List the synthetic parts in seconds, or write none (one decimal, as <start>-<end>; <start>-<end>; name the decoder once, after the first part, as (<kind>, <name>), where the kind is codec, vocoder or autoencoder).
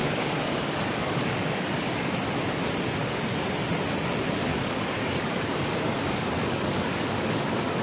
0.0-2.1 (codec, DAC); 4.5-7.8